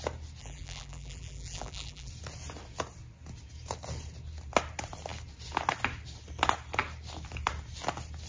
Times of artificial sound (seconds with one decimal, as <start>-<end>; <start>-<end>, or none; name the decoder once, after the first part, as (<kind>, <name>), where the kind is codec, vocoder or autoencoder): 0.4-2.1 (vocoder, BigVGAN v2)